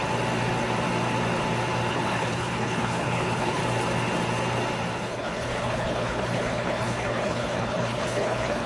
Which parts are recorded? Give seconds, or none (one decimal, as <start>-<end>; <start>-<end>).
0.0-1.9; 3.6-5.0